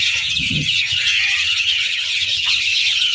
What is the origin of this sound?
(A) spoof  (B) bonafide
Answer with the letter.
A